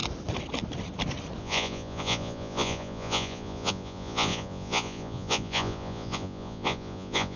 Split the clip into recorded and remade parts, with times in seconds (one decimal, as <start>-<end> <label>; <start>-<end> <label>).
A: 0.0-1.4 recorded; 1.4-7.4 remade